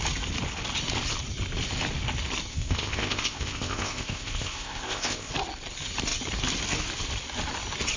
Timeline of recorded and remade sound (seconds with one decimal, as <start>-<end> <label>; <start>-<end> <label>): 0.0-2.5 recorded; 2.5-5.3 remade; 5.3-8.0 recorded